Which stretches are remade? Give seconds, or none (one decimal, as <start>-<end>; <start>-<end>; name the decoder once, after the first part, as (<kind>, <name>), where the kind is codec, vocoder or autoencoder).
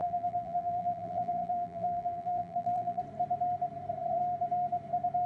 0.0-3.0 (vocoder, BigVGAN v2)